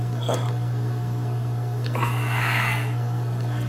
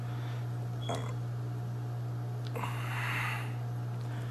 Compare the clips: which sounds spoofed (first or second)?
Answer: first